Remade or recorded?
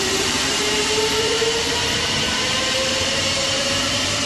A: remade